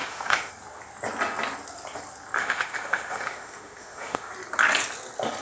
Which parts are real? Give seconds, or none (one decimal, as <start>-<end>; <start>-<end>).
0.5-2.4; 4.3-5.4